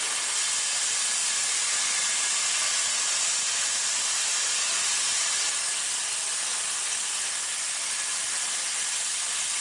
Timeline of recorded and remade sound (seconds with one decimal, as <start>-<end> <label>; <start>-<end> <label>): 0.0-9.6 recorded